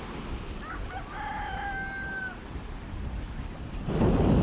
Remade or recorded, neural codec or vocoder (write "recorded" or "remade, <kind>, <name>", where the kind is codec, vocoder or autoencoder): recorded